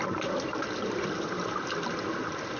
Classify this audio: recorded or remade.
recorded